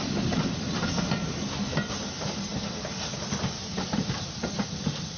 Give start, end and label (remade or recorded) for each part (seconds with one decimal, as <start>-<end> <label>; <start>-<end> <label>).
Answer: 0.0-5.2 recorded